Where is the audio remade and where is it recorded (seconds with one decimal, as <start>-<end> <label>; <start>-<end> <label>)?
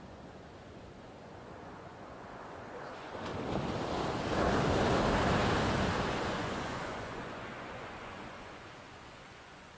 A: 0.0-3.3 remade; 3.3-6.1 recorded; 6.1-9.8 remade